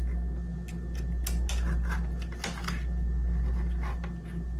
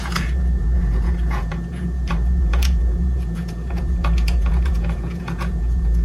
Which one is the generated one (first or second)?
second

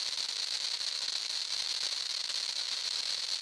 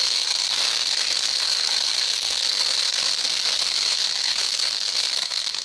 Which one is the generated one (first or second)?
second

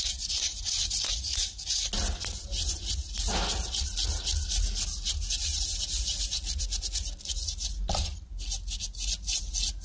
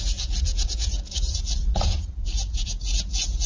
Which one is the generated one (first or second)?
second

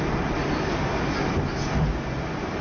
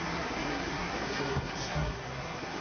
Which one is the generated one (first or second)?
second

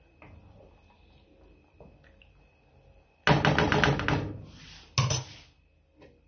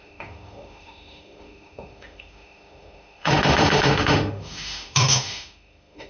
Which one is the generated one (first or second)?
second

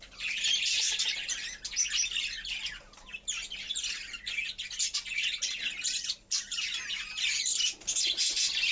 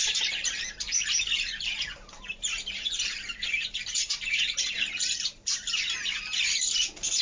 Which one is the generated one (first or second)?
second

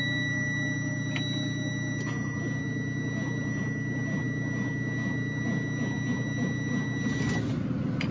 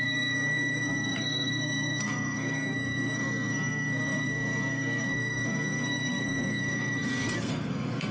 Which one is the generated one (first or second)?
second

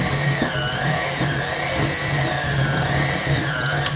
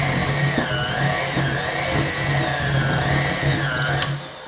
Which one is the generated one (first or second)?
first